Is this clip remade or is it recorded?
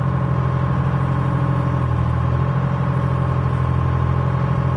recorded